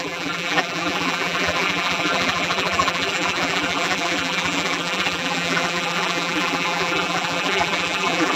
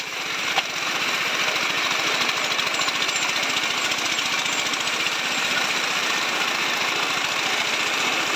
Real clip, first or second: second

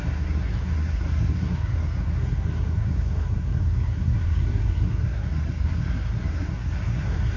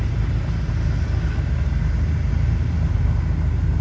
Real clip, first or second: second